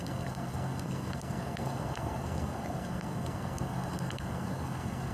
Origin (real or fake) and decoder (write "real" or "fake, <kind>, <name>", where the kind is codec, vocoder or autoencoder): fake, codec, SNAC